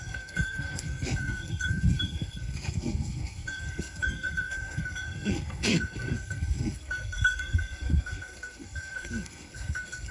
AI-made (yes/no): yes